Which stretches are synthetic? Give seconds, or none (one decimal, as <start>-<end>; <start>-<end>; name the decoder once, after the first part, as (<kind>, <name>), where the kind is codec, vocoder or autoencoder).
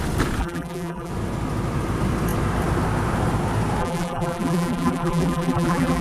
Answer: 0.4-1.1 (vocoder, BigVGAN v2); 3.8-6.0